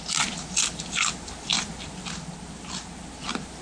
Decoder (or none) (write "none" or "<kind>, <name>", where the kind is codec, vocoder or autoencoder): none